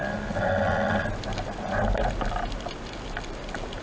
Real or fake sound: real